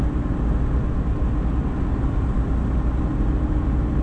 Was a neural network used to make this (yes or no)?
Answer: no